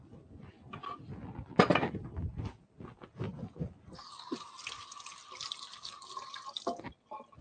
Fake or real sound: real